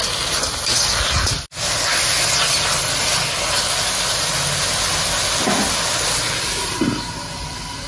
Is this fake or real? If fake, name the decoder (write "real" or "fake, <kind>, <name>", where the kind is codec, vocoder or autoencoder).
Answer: real